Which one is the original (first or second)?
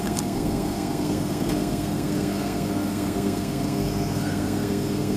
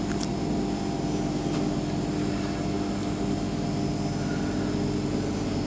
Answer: second